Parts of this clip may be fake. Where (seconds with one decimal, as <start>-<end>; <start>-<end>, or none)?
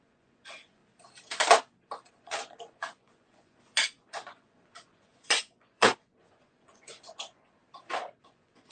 0.0-0.8; 2.1-7.6; 8.2-8.7